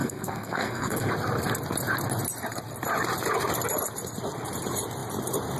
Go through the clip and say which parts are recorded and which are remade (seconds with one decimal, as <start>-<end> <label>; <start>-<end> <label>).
0.0-1.1 remade; 1.1-5.6 recorded